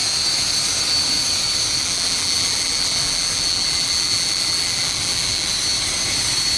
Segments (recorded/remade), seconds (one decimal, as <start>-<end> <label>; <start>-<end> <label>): 0.0-1.8 recorded; 1.8-5.5 remade; 5.5-6.6 recorded